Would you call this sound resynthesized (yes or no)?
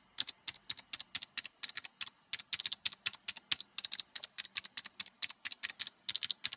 no